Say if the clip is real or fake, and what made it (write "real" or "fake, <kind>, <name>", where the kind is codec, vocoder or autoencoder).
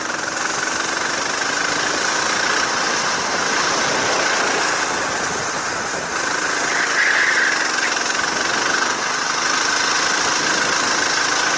real